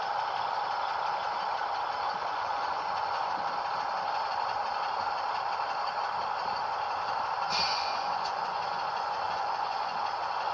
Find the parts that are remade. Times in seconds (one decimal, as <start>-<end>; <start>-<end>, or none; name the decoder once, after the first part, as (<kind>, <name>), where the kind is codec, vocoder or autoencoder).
2.2-3.3 (vocoder, Vocos); 7.7-10.5